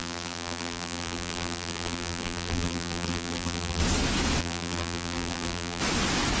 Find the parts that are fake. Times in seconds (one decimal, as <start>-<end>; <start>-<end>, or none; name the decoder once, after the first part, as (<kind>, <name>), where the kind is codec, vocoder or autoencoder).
0.0-3.8 (vocoder, BigVGAN v2); 4.4-5.8